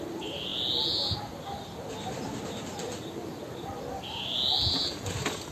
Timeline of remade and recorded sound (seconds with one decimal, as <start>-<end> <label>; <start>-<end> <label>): 0.0-5.5 recorded